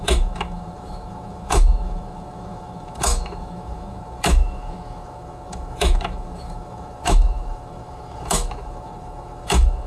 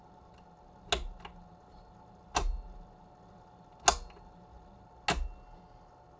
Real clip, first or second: second